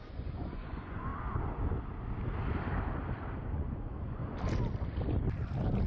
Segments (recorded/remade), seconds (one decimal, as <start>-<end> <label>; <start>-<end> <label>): 0.0-1.1 remade; 1.1-3.4 recorded; 3.4-4.2 remade; 4.2-5.9 recorded